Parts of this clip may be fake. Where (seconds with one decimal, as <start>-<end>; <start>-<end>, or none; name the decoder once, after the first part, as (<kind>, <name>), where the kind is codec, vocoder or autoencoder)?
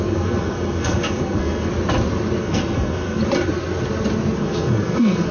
0.0-1.7 (codec, SNAC); 2.4-3.2; 4.4-5.3